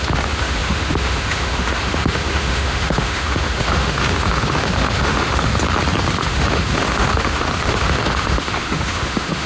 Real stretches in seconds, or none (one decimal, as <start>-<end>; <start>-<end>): 5.5-6.2